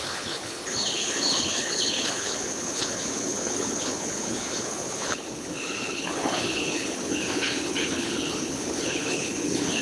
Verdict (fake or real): fake